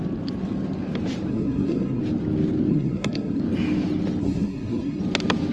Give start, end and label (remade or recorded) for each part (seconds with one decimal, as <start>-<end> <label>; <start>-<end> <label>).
0.0-1.3 recorded; 1.3-2.0 remade; 2.0-2.7 recorded; 2.7-3.4 remade; 3.4-4.2 recorded; 4.2-5.0 remade; 5.0-5.5 recorded